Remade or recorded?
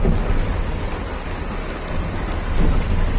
recorded